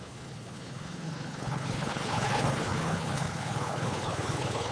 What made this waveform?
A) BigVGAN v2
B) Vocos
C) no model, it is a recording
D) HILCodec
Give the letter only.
D